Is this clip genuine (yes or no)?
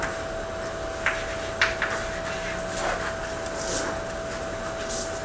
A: yes